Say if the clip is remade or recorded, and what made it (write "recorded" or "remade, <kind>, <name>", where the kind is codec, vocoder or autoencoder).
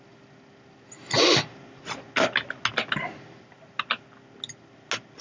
recorded